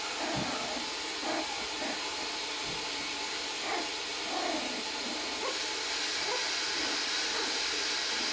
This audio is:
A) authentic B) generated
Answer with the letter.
A